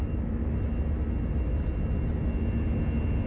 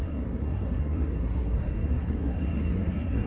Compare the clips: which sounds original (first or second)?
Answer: first